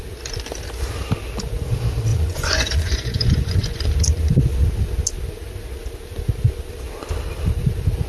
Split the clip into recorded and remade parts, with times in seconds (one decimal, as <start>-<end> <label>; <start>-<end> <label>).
0.0-2.1 recorded; 2.1-3.8 remade; 3.8-8.1 recorded